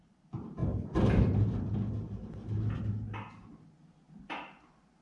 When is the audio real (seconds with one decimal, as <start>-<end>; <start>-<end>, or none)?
0.0-5.0